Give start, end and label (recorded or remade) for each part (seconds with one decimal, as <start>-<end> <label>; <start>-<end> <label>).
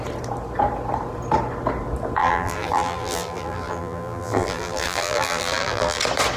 0.0-2.2 recorded; 2.2-6.0 remade; 6.0-6.4 recorded